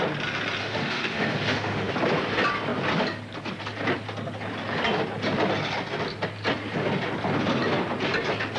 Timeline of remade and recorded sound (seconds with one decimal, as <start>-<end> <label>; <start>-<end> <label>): 0.0-0.6 recorded; 0.6-1.9 remade; 1.9-8.6 recorded

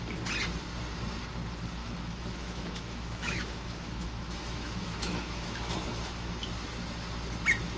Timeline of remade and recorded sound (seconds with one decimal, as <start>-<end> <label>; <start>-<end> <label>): 0.0-1.8 recorded; 1.8-6.3 remade; 6.3-7.8 recorded

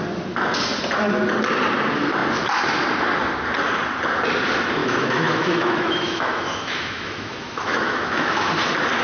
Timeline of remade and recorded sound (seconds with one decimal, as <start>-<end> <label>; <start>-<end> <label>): 0.0-4.8 recorded; 4.8-8.5 remade; 8.5-9.0 recorded

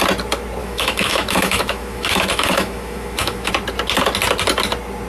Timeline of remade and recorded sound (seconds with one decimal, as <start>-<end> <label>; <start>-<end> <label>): 0.0-0.6 recorded; 0.6-3.5 remade; 3.5-5.1 recorded

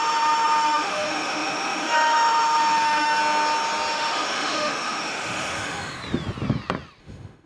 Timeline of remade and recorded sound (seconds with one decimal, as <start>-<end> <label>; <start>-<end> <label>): 0.0-3.2 remade; 3.2-3.9 recorded; 3.9-6.0 remade; 6.0-7.0 recorded; 7.0-7.5 remade

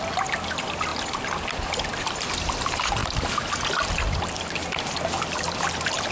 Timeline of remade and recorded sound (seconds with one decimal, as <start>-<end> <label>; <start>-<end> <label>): 0.0-6.1 recorded

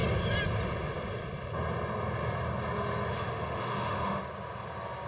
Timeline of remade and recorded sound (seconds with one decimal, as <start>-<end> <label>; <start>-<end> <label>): 0.0-3.1 recorded; 3.1-4.2 remade; 4.2-5.1 recorded

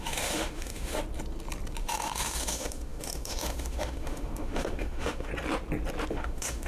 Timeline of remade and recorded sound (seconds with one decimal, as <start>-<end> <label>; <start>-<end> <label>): 0.0-1.0 remade; 1.0-1.8 recorded; 1.8-5.3 remade; 5.3-6.1 recorded; 6.1-6.7 remade